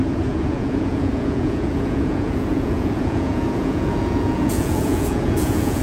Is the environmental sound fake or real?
fake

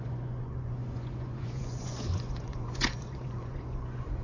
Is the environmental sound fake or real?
fake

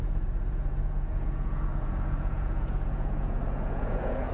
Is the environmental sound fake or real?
fake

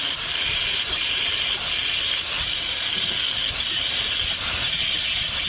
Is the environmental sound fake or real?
real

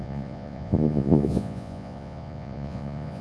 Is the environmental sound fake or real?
fake